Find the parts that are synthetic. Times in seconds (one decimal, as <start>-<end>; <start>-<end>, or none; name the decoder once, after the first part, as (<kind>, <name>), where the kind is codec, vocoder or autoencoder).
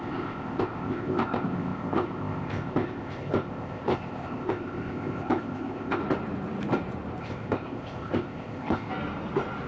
0.0-6.0 (codec, ZipCodec); 7.2-8.9